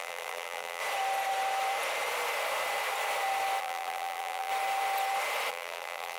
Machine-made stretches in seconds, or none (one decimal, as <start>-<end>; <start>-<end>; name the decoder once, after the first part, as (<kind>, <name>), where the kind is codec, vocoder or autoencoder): 0.0-0.8 (vocoder, BigVGAN v2); 3.6-4.5; 5.5-6.2